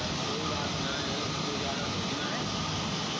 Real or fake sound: real